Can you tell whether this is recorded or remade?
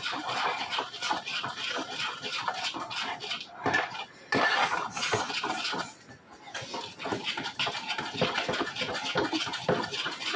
recorded